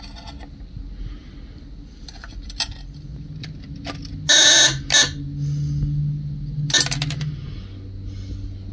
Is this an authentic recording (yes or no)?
yes